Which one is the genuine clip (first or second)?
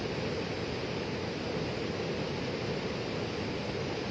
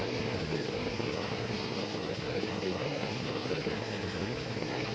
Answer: first